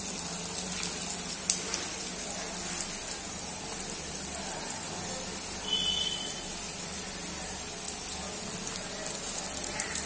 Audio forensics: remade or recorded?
recorded